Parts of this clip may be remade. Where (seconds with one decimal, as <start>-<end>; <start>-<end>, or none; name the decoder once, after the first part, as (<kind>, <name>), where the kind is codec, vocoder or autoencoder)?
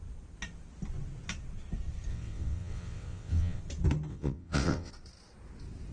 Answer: 2.1-3.6 (vocoder, WaveNeXt); 4.1-4.9